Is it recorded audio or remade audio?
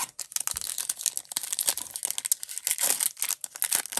recorded